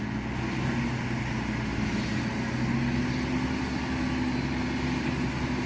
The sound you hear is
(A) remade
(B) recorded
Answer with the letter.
B